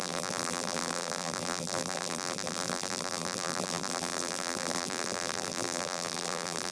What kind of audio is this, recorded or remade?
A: remade